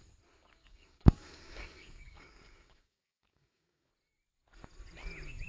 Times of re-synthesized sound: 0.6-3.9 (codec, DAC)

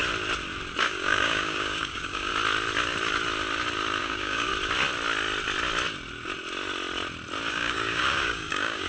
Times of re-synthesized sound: 0.8-2.3 (codec, DAC); 4.0-4.5; 7.5-8.9